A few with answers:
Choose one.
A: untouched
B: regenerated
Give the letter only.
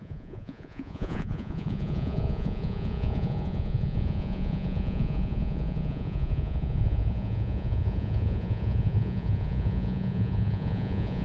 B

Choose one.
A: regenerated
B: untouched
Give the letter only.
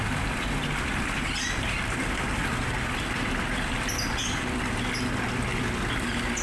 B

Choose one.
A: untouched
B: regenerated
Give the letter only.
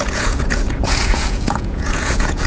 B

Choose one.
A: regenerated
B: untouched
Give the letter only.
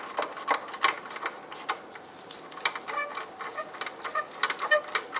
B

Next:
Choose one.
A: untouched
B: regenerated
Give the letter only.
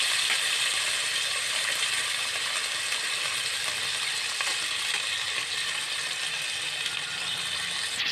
A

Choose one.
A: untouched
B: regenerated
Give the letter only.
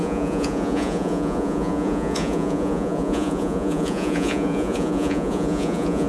B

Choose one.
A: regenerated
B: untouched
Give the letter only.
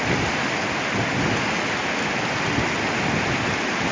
B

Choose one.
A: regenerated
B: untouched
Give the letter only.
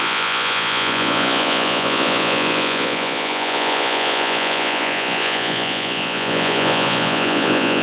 A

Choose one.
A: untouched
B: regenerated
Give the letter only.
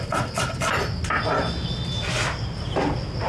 A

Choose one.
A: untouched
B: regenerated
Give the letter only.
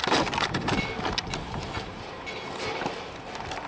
A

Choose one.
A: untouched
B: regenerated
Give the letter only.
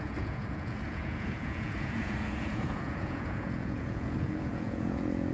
B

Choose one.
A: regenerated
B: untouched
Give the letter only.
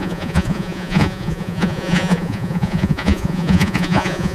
A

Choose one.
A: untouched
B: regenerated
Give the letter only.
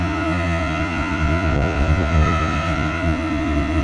B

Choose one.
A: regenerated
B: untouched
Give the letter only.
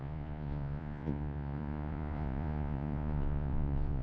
A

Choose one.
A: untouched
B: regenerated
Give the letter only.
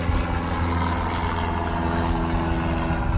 A